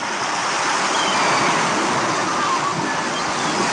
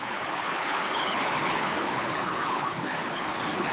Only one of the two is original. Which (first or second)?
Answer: first